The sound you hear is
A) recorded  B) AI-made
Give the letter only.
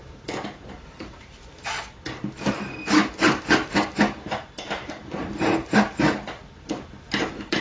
B